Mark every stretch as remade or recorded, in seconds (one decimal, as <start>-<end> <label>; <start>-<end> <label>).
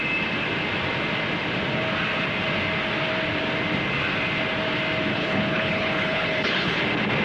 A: 0.0-5.1 recorded; 5.1-6.8 remade; 6.8-7.2 recorded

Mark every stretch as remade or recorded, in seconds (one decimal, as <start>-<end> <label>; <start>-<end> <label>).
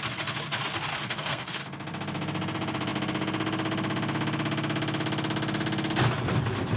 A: 0.0-0.9 recorded; 0.9-1.6 remade; 1.6-6.8 recorded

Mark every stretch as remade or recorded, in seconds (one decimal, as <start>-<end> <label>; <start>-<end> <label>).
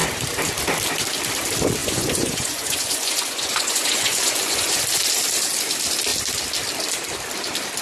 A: 0.0-1.8 recorded; 1.8-4.8 remade; 4.8-7.8 recorded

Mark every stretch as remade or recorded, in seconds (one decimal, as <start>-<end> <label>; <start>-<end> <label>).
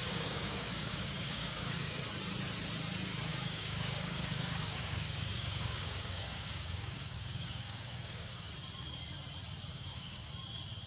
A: 0.0-2.0 remade; 2.0-3.3 recorded; 3.3-8.5 remade; 8.5-9.7 recorded; 9.7-10.3 remade; 10.3-10.9 recorded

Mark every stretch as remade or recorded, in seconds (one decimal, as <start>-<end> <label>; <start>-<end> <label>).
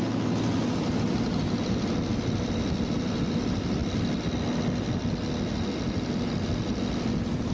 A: 0.0-7.5 recorded